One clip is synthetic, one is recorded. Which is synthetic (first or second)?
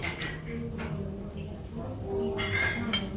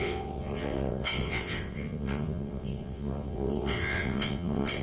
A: second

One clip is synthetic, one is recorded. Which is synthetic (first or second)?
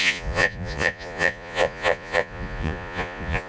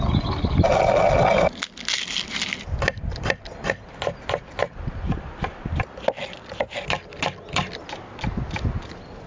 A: first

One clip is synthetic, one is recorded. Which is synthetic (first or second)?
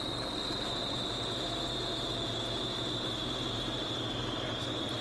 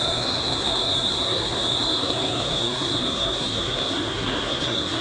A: second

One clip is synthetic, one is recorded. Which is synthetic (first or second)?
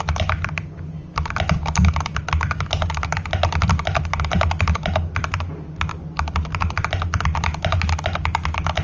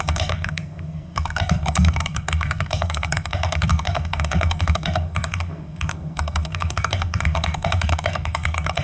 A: second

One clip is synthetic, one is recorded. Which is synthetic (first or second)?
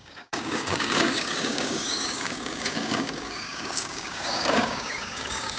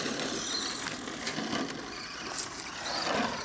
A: first